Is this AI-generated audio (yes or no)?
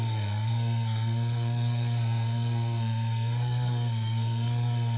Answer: yes